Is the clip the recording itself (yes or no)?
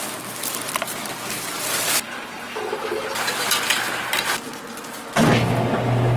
yes